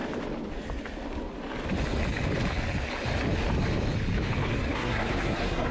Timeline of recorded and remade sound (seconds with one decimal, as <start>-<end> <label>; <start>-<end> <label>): 0.0-4.6 recorded; 4.6-5.7 remade